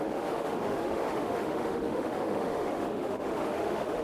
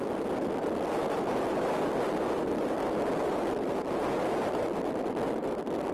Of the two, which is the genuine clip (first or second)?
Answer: second